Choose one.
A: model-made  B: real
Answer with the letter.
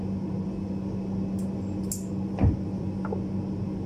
B